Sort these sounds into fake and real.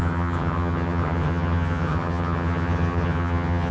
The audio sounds fake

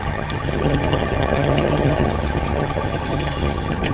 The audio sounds fake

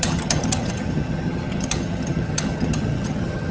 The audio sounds fake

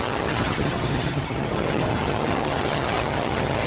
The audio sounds fake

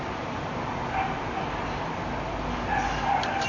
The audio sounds real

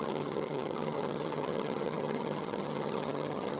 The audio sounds fake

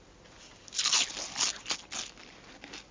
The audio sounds real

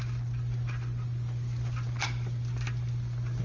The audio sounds real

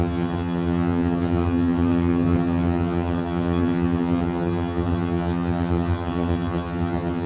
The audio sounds fake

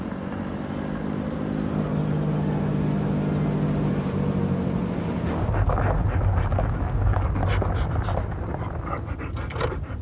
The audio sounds real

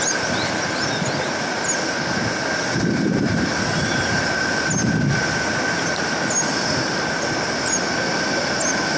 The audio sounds real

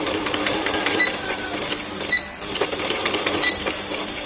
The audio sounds real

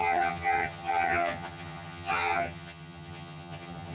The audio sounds fake